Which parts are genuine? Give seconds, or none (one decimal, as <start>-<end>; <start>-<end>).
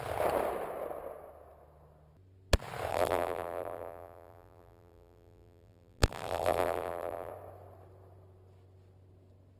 0.0-2.9; 7.3-9.6